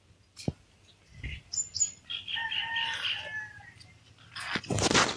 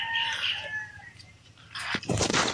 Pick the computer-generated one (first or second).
second